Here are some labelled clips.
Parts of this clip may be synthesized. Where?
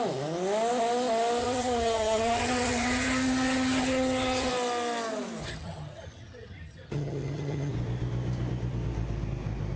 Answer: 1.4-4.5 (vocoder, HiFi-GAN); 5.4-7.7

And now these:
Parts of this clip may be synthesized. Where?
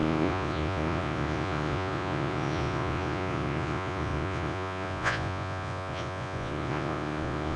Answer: 0.0-7.6 (vocoder, Vocos)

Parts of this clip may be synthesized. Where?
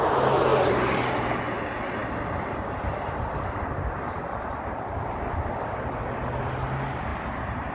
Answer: 0.5-1.3 (vocoder, BigVGAN v2); 2.0-5.8; 7.1-7.7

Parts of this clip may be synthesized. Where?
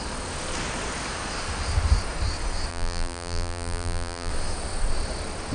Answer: 2.7-4.3 (vocoder, BigVGAN v2)